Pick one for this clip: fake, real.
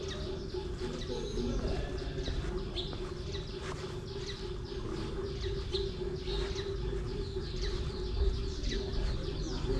real